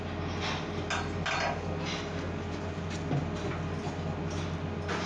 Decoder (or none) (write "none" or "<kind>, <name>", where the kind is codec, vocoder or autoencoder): none